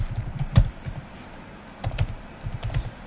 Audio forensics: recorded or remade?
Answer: remade